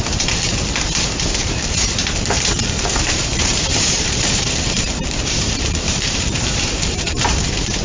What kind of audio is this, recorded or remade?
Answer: remade